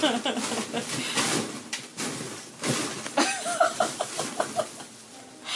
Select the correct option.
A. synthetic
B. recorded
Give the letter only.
B